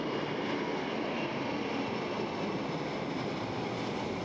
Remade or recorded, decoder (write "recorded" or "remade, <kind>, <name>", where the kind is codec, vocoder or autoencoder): recorded